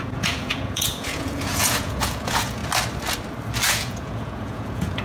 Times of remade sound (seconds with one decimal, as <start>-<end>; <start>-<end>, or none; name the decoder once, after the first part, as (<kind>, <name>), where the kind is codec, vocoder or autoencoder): 0.0-2.6 (vocoder, Vocos); 3.7-5.0